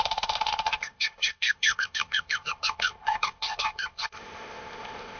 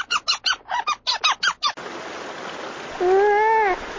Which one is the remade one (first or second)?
first